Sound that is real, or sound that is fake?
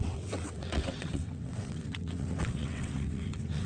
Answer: fake